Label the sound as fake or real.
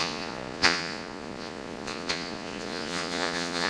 fake